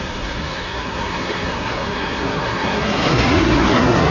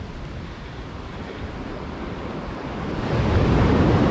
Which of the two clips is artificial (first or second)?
first